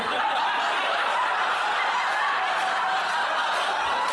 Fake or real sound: real